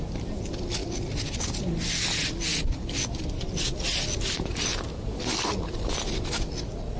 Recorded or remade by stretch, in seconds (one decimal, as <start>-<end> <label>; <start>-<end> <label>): 0.0-7.0 recorded